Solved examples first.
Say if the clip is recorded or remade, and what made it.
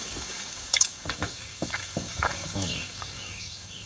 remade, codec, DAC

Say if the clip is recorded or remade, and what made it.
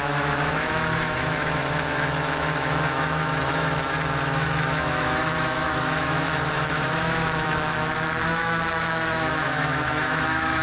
remade, autoencoder, DAC-VAE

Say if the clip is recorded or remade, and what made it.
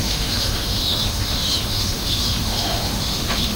remade, autoencoder, DAC-VAE